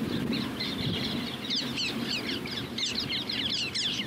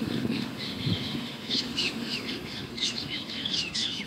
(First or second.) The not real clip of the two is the second